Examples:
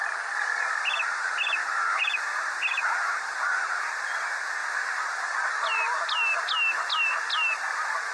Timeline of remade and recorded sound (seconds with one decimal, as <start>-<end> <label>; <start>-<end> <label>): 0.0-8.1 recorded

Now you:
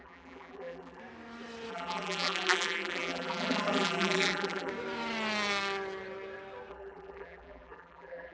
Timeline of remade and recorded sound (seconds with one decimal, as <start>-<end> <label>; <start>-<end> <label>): 0.0-1.0 remade; 1.0-1.7 recorded; 1.7-4.7 remade; 4.7-6.7 recorded; 6.7-8.3 remade

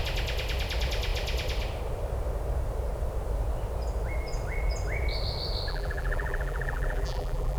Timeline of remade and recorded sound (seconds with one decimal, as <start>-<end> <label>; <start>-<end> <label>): 0.0-5.7 recorded; 5.7-7.6 remade

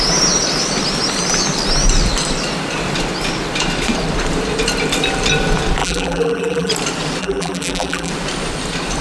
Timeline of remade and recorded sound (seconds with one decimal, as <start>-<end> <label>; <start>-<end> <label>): 0.0-5.8 recorded; 5.8-6.7 remade; 6.7-7.2 recorded; 7.2-8.1 remade; 8.1-9.0 recorded